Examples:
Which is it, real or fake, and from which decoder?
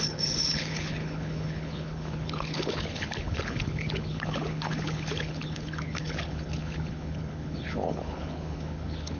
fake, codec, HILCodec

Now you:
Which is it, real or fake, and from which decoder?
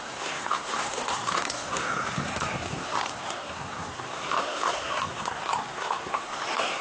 fake, codec, SNAC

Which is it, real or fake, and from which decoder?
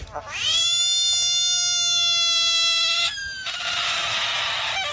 real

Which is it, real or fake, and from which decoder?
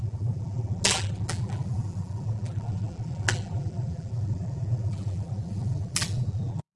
fake, vocoder, BigVGAN v2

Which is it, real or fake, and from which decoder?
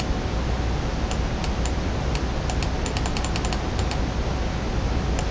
real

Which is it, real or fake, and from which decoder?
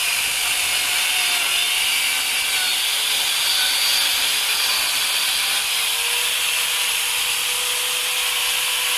real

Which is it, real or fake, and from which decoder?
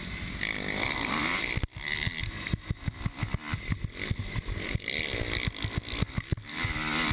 real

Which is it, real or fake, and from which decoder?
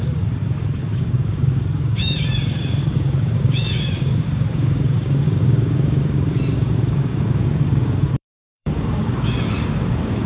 fake, codec, DAC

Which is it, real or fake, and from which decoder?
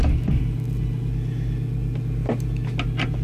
real